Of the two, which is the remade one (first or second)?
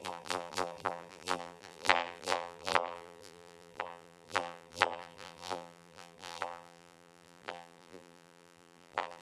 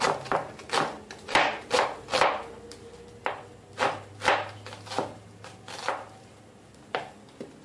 first